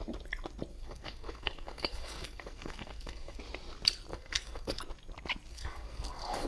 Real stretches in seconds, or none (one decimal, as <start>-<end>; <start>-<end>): 0.0-0.7; 3.4-4.1; 4.8-5.5